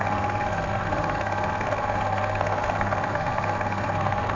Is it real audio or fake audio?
fake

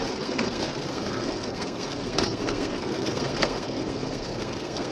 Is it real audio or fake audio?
fake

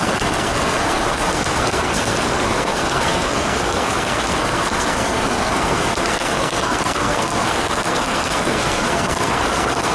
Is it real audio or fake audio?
fake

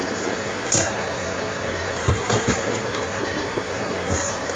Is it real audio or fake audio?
fake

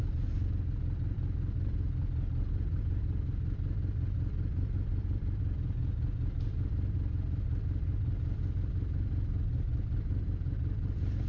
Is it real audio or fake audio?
real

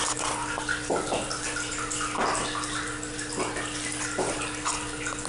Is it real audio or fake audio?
real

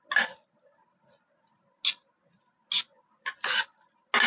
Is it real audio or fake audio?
real